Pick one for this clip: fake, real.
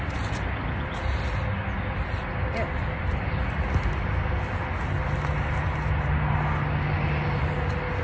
real